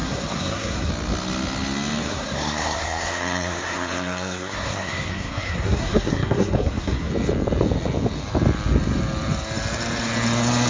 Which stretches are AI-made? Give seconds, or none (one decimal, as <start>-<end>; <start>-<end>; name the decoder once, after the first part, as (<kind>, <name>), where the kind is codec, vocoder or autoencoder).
0.0-0.9 (codec, SNAC); 2.0-7.1